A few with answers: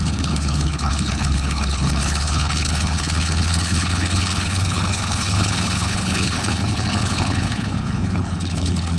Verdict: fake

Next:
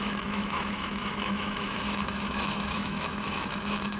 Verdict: fake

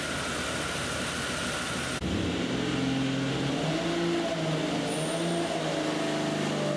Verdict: real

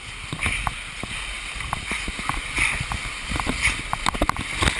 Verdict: real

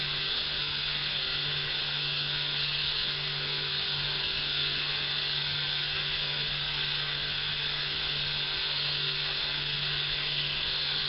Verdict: fake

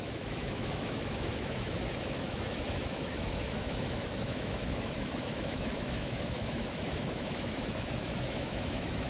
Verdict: fake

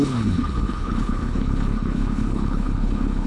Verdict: fake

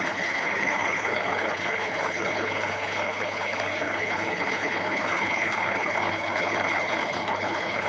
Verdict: fake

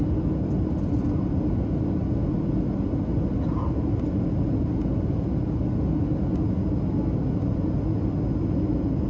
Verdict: real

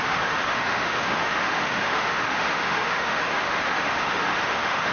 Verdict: fake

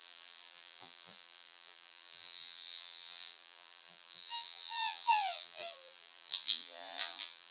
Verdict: fake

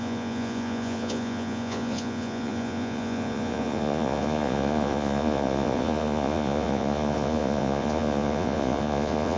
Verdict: fake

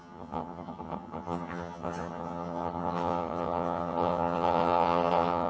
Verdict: fake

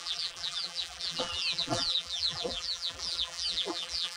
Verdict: fake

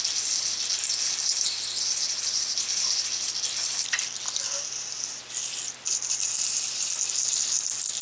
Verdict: real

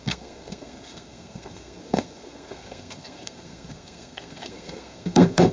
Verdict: fake